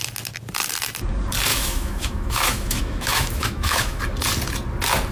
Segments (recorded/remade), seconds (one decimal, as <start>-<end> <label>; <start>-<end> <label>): 0.0-1.5 recorded; 1.5-4.0 remade; 4.0-5.1 recorded